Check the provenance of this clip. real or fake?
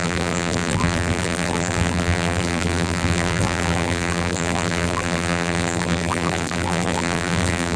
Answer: fake